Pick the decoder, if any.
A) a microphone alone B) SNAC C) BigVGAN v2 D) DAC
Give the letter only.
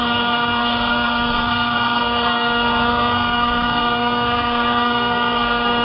B